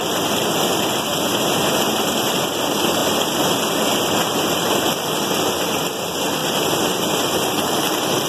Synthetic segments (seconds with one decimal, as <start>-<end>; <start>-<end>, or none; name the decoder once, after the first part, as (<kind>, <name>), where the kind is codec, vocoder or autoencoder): 0.0-1.1 (vocoder, BigVGAN v2); 1.7-3.0; 5.6-8.3

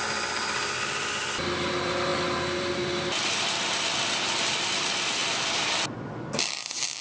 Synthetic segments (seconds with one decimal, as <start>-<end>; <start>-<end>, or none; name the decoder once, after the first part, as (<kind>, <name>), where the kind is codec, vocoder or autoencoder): none

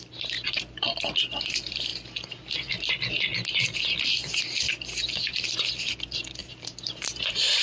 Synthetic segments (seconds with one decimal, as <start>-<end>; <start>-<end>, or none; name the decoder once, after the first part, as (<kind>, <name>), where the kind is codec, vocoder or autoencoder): 0.0-7.6 (vocoder, BigVGAN v2)

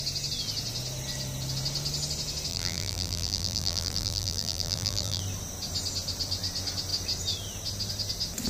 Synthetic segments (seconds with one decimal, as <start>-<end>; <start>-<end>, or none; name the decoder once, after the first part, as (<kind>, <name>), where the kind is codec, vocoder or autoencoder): 2.5-5.2 (vocoder, BigVGAN v2)

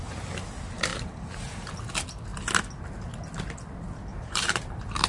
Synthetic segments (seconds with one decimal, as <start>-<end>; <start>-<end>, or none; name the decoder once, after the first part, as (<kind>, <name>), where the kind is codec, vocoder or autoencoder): 0.9-1.7 (vocoder, BigVGAN v2); 4.1-5.1

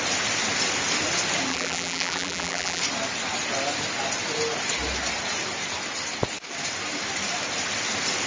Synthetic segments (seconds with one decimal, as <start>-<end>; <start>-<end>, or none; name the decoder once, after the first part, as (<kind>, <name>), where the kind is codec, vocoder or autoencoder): 1.5-2.8 (vocoder, BigVGAN v2)

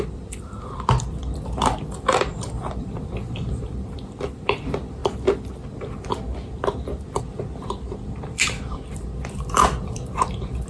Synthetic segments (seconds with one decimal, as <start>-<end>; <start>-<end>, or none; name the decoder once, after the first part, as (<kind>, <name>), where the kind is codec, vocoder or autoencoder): 0.0-5.0 (vocoder, BigVGAN v2); 7.2-10.7

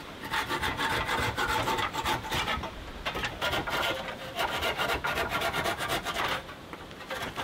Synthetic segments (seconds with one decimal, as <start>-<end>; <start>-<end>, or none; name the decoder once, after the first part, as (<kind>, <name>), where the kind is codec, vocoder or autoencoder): 0.0-7.4 (vocoder, BigVGAN v2)